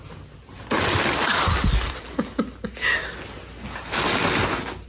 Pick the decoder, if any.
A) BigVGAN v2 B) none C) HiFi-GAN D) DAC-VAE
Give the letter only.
B